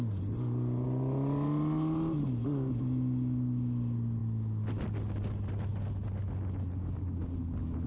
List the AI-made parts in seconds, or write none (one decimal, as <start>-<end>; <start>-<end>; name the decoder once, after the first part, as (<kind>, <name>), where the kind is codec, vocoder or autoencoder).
none